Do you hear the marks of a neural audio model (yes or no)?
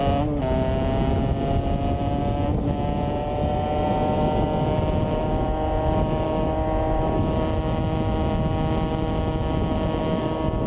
no